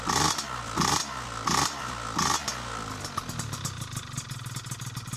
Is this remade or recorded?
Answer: recorded